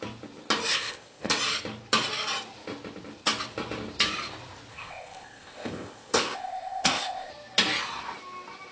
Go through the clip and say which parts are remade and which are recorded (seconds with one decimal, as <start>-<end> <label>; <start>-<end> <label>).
0.0-0.7 recorded; 0.7-1.3 remade; 1.3-4.7 recorded; 4.7-7.3 remade; 7.3-8.7 recorded